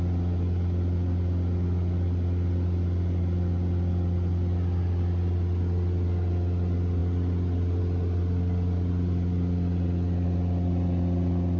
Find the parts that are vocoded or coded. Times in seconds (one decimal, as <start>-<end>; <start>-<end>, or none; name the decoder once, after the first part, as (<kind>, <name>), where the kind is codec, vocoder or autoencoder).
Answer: none